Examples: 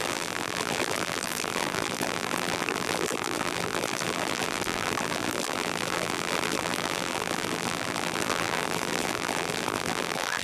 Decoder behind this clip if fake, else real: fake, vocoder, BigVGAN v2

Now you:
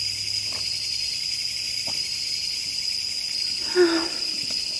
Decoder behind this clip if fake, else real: real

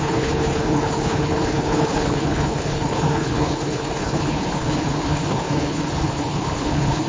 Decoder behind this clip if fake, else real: fake, codec, HILCodec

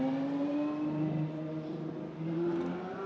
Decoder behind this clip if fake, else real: real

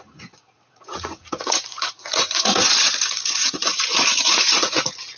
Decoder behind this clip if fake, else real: fake, vocoder, Vocos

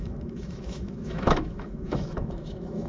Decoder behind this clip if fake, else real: fake, autoencoder, DAC-VAE